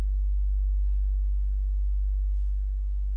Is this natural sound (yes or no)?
yes